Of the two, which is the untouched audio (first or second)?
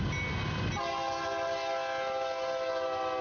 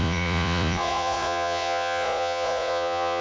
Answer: first